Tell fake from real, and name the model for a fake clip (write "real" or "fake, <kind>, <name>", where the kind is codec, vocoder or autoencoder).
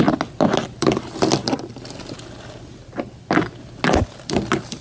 real